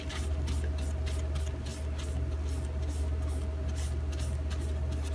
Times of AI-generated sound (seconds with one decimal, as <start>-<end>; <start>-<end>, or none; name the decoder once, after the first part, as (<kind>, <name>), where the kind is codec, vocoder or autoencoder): none

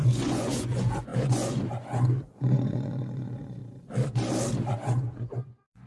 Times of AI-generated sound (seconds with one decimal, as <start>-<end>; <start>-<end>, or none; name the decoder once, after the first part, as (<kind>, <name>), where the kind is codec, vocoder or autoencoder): 0.0-3.6 (vocoder, Vocos); 4.8-5.9